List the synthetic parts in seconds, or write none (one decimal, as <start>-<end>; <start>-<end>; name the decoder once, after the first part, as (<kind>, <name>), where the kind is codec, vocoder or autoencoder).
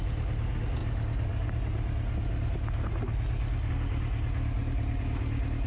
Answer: none